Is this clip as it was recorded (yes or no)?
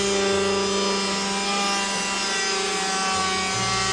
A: yes